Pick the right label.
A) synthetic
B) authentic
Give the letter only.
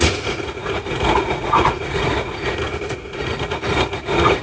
A